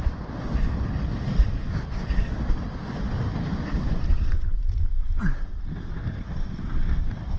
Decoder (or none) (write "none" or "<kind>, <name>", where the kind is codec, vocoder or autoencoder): none